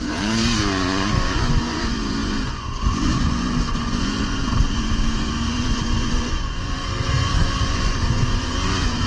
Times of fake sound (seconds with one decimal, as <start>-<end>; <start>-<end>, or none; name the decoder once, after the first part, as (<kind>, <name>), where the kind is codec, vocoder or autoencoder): 0.0-9.1 (vocoder, Vocos)